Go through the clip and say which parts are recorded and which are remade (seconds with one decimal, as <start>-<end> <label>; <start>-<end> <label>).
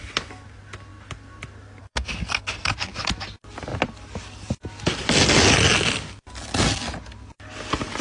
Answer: 0.0-1.8 recorded; 1.8-2.7 remade; 2.7-8.0 recorded